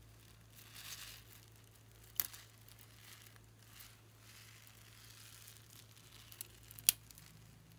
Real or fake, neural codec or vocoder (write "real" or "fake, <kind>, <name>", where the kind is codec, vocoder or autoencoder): real